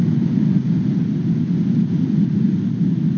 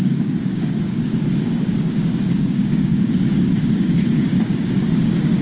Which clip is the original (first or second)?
first